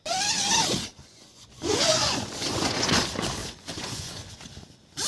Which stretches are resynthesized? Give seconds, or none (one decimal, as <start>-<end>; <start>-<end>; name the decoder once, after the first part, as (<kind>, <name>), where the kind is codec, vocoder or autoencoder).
0.9-3.0 (vocoder, Vocos); 3.4-4.4